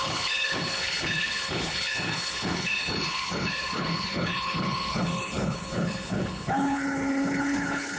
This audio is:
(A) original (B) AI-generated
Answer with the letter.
B